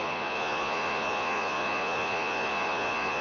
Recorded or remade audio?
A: remade